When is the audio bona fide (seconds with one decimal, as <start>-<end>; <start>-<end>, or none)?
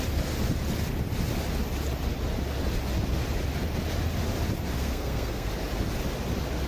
0.0-4.8; 5.5-6.7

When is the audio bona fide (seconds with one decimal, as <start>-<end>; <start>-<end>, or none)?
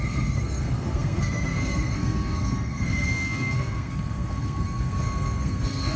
none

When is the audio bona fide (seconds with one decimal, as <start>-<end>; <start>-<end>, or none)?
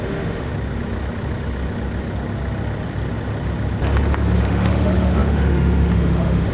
0.5-4.4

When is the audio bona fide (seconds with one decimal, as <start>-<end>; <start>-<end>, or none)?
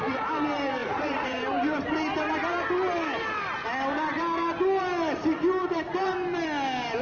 0.0-0.8; 1.4-5.6; 6.1-7.0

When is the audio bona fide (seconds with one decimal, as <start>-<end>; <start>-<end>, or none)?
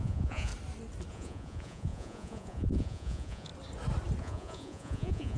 0.5-1.1; 3.5-4.2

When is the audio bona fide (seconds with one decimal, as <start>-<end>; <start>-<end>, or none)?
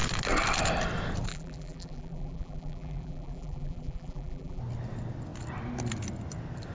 0.0-1.3; 4.6-6.7